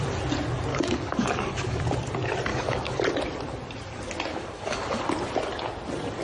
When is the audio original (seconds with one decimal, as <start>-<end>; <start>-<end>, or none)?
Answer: 0.0-0.7; 1.8-2.5; 3.0-4.3; 5.0-6.2